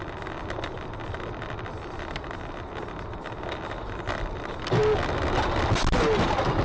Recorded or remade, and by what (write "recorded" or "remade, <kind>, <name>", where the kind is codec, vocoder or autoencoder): recorded